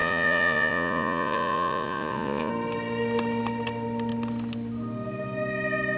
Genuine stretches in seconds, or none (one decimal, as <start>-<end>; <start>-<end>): 2.5-6.0